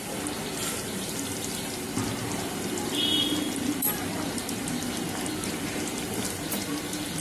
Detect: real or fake real